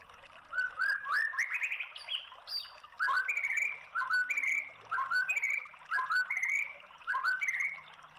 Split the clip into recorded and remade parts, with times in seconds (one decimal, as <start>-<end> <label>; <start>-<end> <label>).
0.0-8.2 recorded